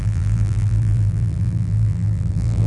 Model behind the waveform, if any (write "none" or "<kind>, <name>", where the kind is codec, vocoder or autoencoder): vocoder, BigVGAN v2